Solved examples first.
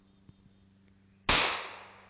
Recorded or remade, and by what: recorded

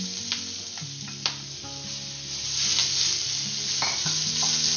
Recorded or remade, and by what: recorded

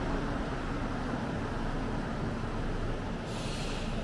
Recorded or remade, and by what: recorded